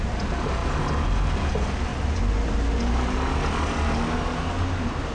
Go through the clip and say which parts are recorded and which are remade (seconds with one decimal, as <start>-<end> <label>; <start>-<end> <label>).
0.0-5.1 recorded